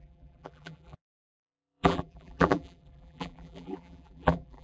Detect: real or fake fake